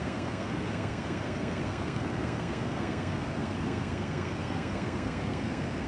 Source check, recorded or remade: remade